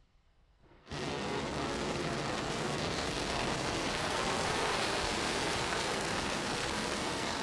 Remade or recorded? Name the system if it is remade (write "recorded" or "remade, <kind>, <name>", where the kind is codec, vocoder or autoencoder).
remade, codec, SNAC